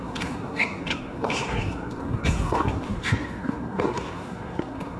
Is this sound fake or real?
fake